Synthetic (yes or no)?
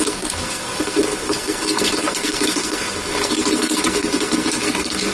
yes